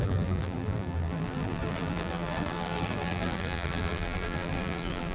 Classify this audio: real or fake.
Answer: fake